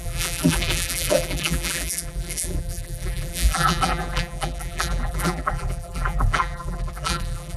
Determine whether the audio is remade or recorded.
remade